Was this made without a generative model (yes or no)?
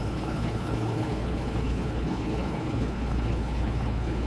no